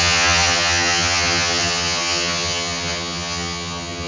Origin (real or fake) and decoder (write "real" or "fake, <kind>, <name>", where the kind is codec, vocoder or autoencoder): fake, vocoder, HiFi-GAN